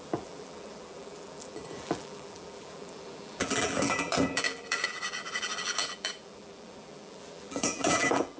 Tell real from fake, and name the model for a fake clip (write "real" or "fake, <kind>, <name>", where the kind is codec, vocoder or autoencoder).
fake, vocoder, BigVGAN v2